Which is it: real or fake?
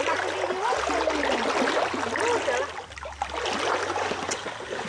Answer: real